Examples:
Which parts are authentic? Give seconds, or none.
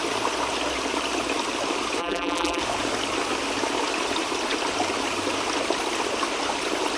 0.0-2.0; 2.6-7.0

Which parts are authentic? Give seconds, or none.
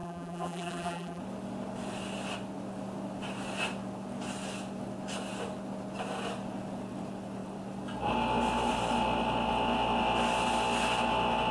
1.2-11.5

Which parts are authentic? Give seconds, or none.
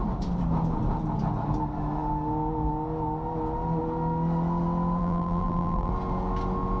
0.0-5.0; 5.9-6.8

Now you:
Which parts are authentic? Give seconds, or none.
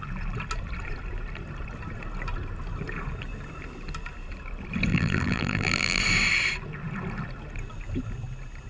0.0-4.9; 6.0-8.7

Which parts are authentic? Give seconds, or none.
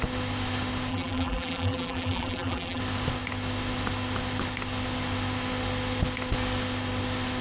0.0-0.9; 2.8-7.4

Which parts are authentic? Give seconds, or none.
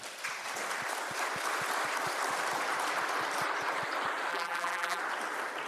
0.0-4.3; 5.0-5.7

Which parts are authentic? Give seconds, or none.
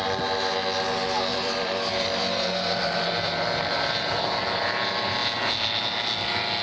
0.0-1.3; 4.4-6.6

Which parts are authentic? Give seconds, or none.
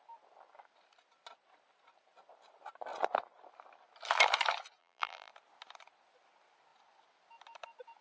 0.0-4.8; 5.3-8.0